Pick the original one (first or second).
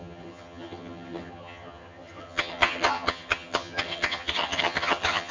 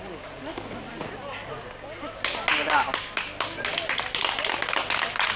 second